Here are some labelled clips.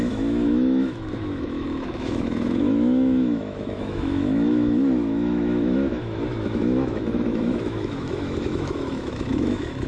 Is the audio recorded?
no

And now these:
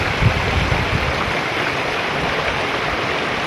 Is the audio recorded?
yes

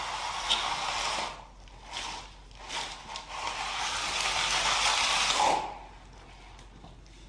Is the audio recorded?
yes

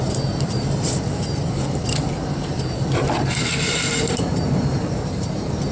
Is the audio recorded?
no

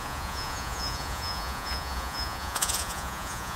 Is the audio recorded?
no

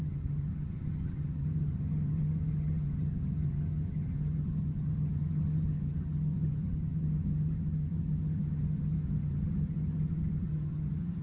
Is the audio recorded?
no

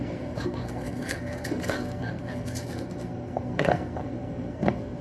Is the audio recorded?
no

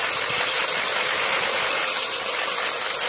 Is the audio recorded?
yes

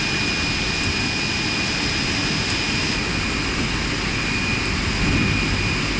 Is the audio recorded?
yes